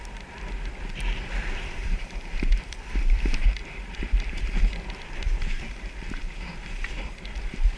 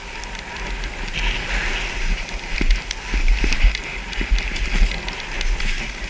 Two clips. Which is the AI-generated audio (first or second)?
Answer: first